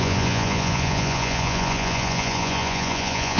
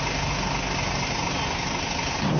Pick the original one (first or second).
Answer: second